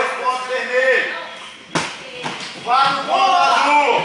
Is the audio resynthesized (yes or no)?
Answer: no